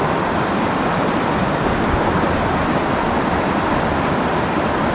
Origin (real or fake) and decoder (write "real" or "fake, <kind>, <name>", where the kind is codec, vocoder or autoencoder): real